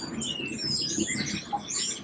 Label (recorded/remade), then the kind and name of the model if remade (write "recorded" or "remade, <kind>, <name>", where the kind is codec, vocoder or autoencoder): recorded